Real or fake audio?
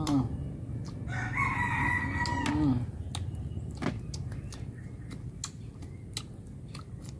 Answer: real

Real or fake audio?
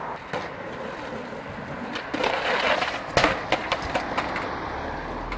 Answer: real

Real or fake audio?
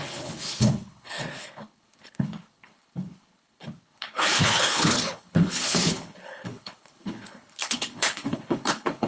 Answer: fake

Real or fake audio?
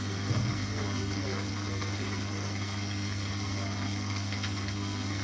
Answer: fake